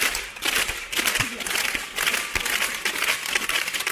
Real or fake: real